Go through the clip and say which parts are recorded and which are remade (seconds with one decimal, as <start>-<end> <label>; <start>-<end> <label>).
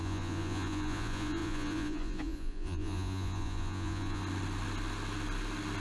0.0-4.2 remade; 4.2-5.8 recorded